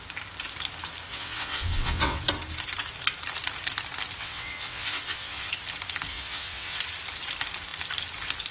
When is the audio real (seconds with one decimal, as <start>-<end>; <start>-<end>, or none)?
0.0-1.1; 2.2-4.2; 5.5-6.1; 6.8-8.5